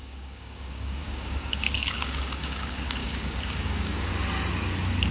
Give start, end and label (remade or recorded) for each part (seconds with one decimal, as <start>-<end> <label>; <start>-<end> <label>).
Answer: 0.0-4.1 remade; 4.1-5.1 recorded